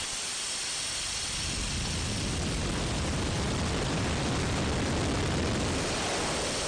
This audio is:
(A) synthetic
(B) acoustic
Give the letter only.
B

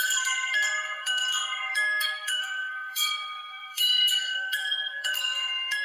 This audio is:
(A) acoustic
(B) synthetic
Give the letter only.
B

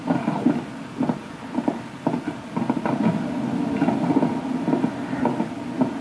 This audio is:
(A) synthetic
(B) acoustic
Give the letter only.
B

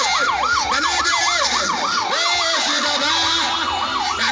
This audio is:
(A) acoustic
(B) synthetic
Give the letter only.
A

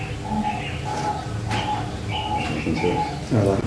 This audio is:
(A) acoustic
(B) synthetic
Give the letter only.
A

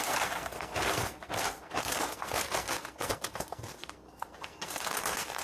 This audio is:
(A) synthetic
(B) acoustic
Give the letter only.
A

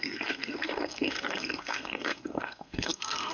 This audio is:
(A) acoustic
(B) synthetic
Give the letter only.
B